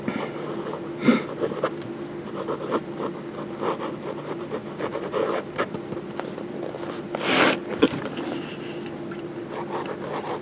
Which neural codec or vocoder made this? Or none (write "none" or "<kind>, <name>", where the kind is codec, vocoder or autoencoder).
none